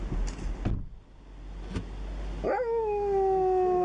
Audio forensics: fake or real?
real